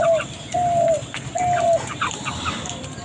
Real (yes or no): yes